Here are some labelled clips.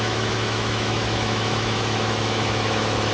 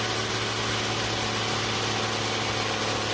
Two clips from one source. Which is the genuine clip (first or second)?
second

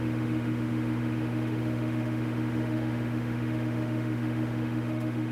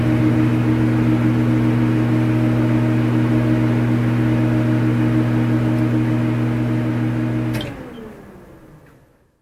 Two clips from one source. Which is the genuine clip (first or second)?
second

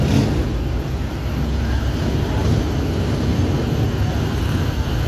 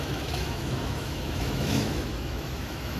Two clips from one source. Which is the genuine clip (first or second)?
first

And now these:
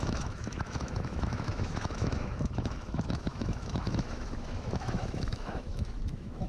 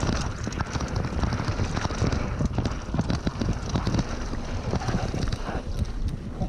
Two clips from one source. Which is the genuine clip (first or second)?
second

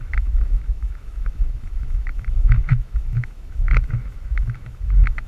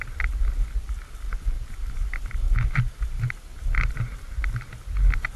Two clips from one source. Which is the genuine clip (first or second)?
second